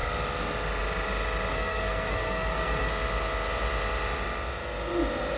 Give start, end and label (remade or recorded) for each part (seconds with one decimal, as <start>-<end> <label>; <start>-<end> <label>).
0.0-1.5 recorded; 1.5-2.9 remade; 2.9-5.4 recorded